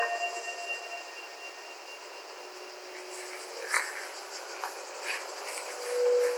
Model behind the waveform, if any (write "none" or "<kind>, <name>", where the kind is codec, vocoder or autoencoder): none